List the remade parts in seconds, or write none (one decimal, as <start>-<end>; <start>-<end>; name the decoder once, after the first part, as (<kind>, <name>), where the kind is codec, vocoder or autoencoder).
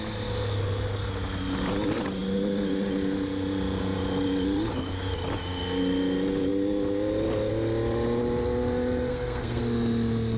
9.1-9.6 (codec, SNAC)